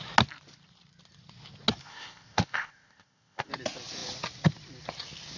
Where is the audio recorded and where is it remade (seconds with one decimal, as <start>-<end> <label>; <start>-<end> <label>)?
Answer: 0.0-1.8 recorded; 1.8-3.5 remade; 3.5-5.4 recorded